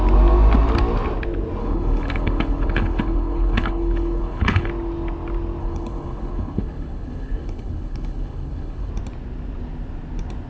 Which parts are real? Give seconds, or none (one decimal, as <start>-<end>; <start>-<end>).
0.0-1.6; 4.7-5.6; 8.9-10.5

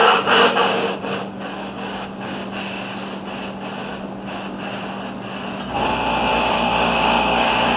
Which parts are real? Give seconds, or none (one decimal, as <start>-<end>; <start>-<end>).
2.4-6.3

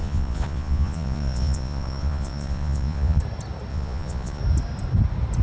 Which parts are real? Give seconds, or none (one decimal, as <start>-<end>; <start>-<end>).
3.2-3.7; 4.4-5.4